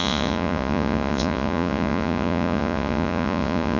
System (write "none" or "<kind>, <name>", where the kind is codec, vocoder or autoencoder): vocoder, Vocos